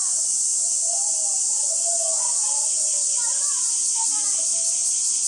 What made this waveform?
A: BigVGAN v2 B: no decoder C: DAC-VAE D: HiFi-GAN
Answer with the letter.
B